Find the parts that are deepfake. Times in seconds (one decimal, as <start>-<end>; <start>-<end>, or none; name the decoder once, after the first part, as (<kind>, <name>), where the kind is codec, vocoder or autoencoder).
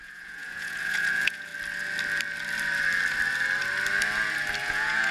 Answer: 0.0-1.5 (vocoder, Vocos); 4.6-5.1